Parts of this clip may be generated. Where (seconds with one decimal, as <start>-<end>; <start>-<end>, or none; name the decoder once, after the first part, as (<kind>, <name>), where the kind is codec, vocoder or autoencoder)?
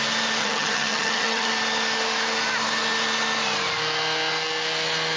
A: 0.4-1.5 (vocoder, HiFi-GAN)